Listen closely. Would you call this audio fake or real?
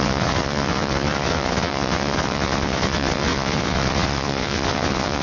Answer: fake